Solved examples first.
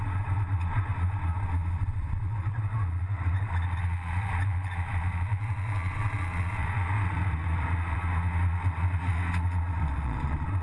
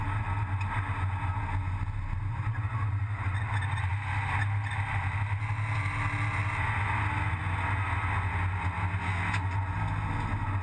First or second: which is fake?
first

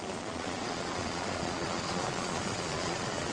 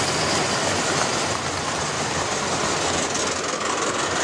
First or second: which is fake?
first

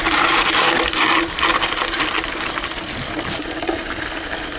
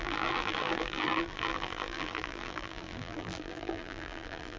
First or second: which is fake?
second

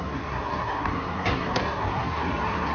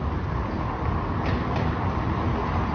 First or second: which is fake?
first